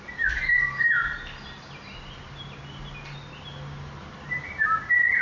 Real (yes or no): yes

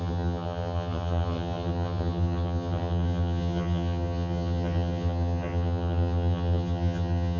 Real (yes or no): no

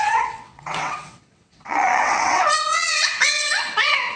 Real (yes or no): no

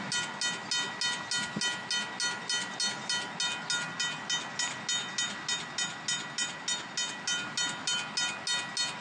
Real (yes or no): yes